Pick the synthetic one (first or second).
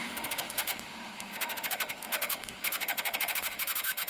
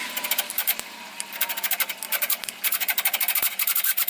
first